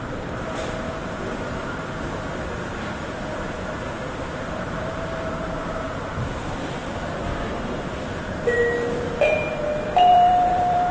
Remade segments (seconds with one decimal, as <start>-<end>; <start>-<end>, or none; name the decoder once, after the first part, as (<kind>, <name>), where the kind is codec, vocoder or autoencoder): 0.0-6.8 (vocoder, BigVGAN v2); 8.2-10.9